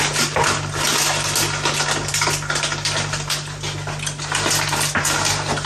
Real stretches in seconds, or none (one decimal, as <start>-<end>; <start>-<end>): 0.0-5.7